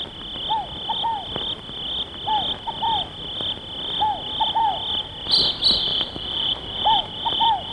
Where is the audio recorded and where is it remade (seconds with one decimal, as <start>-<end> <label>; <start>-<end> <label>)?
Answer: 0.0-5.9 recorded; 5.9-6.8 remade; 6.8-7.7 recorded